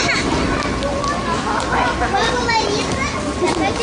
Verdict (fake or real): real